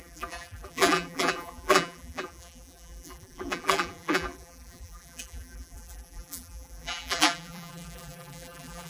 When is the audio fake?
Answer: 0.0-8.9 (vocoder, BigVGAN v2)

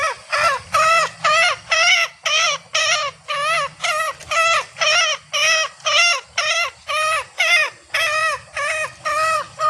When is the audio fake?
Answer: 0.0-3.0 (vocoder, BigVGAN v2); 6.9-8.2; 9.0-9.7